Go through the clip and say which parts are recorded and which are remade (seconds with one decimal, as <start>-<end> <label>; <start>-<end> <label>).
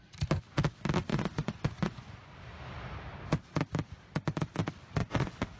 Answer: 0.0-1.1 recorded; 1.1-2.4 remade; 2.4-5.0 recorded; 5.0-5.6 remade